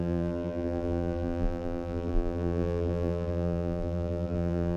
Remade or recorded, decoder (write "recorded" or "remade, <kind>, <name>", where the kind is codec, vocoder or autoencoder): remade, vocoder, BigVGAN v2